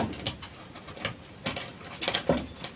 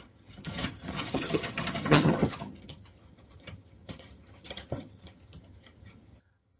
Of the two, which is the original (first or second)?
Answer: first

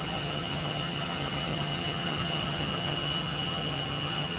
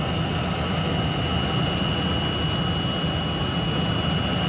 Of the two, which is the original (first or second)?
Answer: second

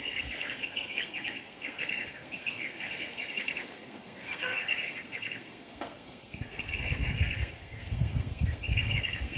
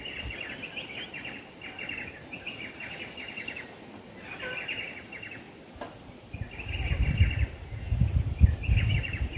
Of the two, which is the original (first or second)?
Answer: second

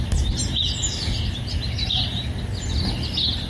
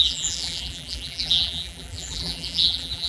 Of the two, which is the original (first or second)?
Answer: first